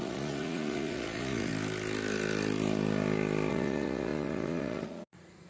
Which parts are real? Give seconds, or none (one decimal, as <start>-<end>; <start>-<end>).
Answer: 1.5-3.5

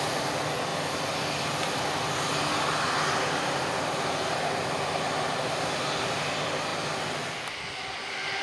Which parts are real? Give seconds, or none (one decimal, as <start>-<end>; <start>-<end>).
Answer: 0.0-8.4

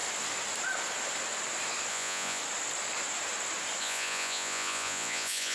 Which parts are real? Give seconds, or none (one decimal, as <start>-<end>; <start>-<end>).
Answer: 0.0-1.9; 2.4-3.8

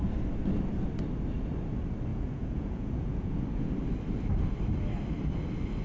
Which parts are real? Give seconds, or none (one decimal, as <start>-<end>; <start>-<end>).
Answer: 0.0-2.1; 3.7-5.8

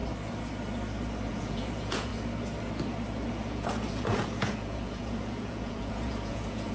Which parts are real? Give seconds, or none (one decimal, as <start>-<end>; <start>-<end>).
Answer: 0.0-1.3; 2.1-3.3

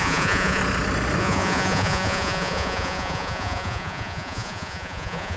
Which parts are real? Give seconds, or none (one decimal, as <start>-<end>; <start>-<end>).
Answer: 0.6-1.2

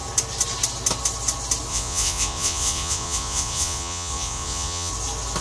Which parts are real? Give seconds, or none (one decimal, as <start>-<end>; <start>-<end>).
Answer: 0.0-1.7; 4.9-5.4

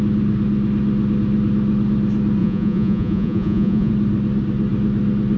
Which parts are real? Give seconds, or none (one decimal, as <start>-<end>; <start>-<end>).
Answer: 0.0-2.4; 3.9-5.4